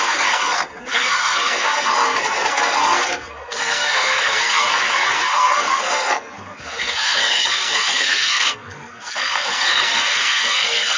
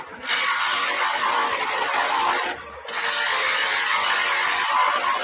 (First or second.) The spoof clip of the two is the first